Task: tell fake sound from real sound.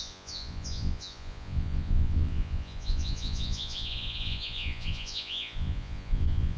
fake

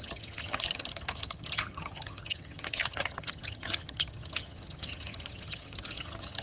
fake